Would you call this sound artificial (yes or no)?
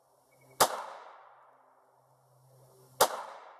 no